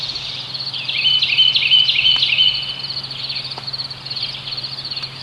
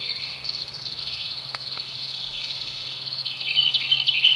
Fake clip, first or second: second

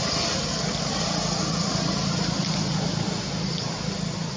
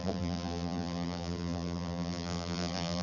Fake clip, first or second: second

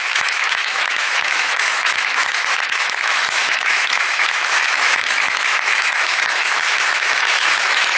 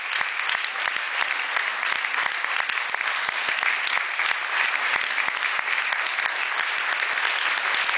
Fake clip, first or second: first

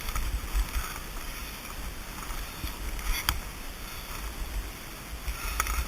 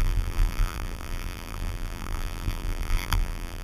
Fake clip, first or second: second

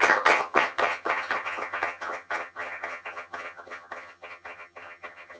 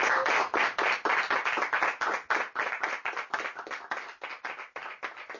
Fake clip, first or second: first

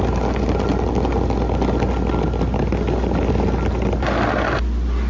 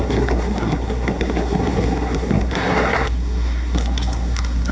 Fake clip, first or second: second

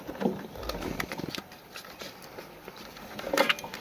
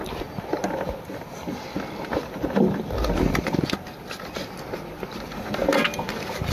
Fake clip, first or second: first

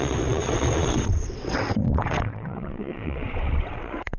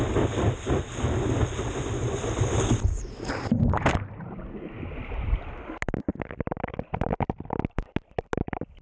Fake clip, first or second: first